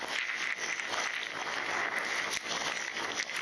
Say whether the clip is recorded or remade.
recorded